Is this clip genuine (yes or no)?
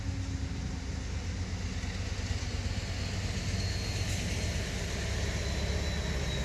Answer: yes